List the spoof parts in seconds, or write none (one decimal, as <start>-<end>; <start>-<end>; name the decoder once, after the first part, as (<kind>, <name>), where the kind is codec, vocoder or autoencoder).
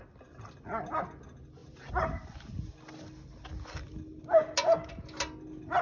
none